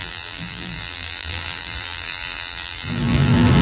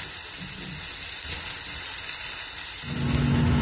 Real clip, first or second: second